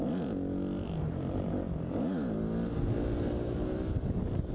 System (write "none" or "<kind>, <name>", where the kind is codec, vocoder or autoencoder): none